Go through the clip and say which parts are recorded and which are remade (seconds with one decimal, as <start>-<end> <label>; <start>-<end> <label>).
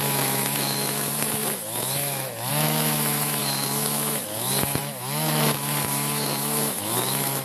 0.0-7.4 remade